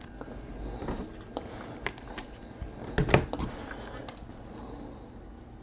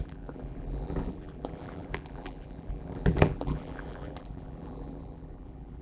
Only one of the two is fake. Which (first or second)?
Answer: second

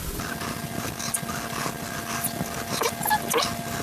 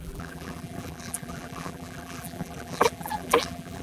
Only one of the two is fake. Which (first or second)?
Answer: second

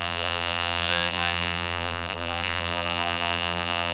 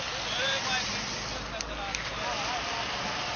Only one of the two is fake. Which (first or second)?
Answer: first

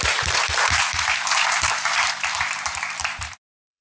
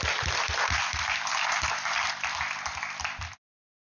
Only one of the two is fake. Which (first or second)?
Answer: first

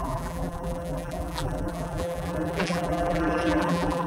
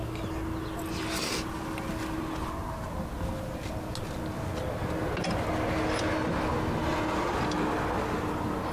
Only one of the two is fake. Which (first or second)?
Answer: first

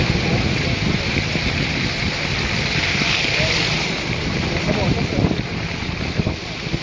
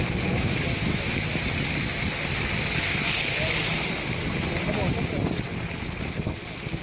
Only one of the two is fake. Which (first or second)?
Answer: first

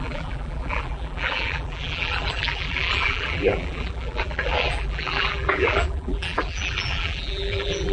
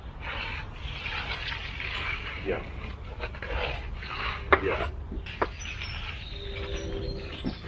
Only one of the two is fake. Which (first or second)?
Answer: first